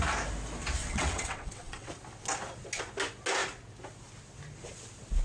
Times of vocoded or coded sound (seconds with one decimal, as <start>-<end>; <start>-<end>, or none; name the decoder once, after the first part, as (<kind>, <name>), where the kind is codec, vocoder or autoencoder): 0.8-1.9 (vocoder, WaveNeXt)